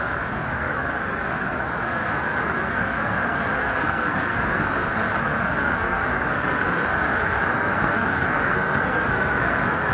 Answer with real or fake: fake